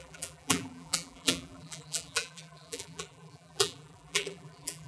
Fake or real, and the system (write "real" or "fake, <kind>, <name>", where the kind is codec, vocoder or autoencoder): fake, vocoder, BigVGAN v2